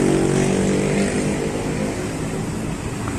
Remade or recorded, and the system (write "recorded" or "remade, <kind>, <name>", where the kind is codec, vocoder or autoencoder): recorded